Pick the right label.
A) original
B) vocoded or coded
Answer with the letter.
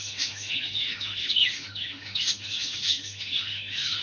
B